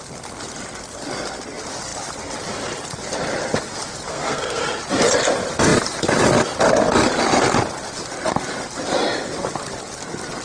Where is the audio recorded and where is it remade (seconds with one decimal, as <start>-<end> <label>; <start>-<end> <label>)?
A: 0.0-4.1 recorded; 4.1-4.6 remade; 4.6-10.4 recorded